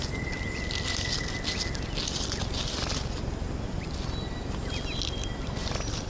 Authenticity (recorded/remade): recorded